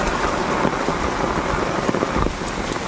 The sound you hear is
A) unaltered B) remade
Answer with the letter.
B